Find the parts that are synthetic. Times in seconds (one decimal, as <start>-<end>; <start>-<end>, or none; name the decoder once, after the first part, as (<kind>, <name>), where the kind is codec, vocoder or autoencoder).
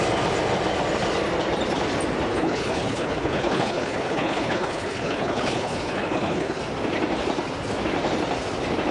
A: 2.3-6.6 (codec, HILCodec)